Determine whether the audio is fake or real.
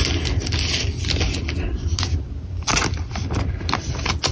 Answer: real